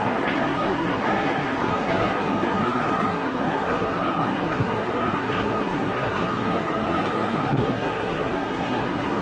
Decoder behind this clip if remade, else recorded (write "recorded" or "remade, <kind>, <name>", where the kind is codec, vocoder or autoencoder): remade, codec, SNAC